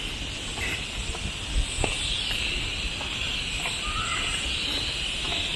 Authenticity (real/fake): real